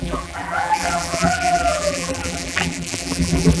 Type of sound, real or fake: fake